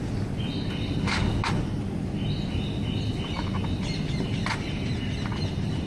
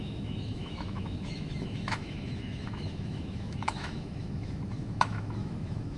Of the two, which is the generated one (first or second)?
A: second